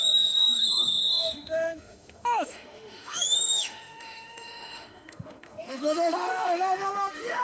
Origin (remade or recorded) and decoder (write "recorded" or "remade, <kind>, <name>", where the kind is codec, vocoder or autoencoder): remade, autoencoder, DAC-VAE